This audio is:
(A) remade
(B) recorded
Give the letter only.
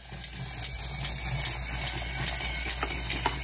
B